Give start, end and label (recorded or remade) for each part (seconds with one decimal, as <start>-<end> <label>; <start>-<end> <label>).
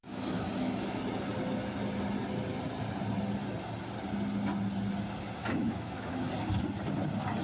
0.0-1.0 remade; 1.0-5.4 recorded; 5.4-6.3 remade; 6.3-7.4 recorded